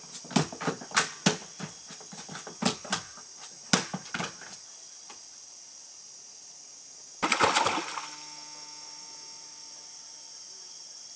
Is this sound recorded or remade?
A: recorded